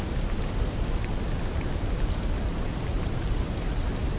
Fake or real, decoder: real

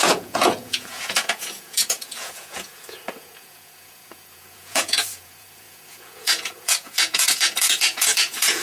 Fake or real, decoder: fake, vocoder, Vocos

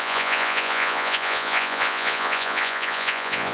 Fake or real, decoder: fake, vocoder, Vocos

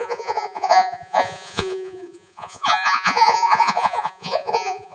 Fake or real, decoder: fake, vocoder, Vocos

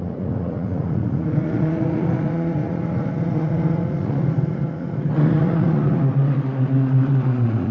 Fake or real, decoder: fake, vocoder, Vocos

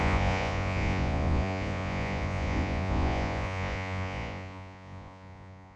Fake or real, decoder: fake, vocoder, Vocos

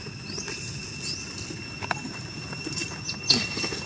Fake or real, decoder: real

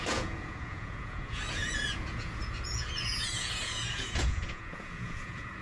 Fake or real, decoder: fake, vocoder, Vocos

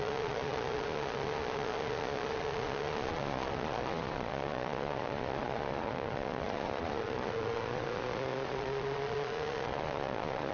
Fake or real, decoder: fake, vocoder, Vocos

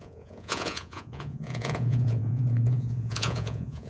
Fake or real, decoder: fake, vocoder, Vocos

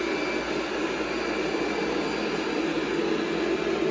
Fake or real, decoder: real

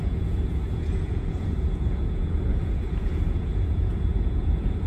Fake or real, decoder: fake, vocoder, Vocos